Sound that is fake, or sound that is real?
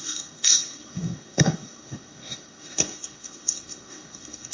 fake